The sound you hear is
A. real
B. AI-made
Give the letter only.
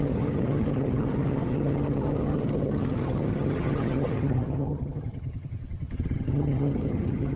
B